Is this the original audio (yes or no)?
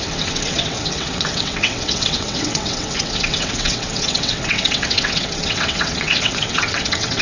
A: no